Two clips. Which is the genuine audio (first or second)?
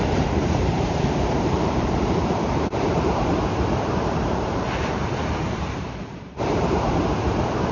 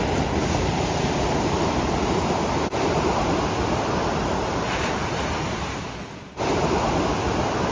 second